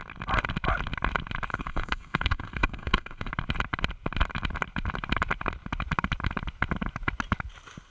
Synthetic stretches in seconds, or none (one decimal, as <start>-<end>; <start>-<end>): 1.5-3.3